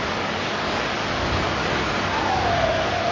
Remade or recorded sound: remade